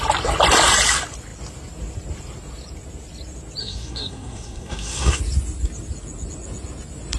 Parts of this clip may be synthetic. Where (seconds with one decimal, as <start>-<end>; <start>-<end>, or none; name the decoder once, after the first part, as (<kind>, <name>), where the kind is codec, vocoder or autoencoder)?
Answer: 3.6-5.2 (codec, SNAC)